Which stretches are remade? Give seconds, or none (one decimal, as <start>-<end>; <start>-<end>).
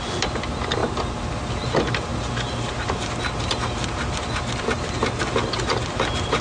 none